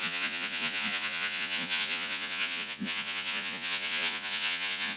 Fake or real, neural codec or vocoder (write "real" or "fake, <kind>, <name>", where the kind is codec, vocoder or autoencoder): fake, vocoder, Vocos